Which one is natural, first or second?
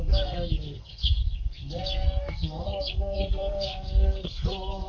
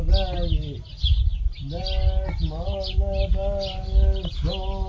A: second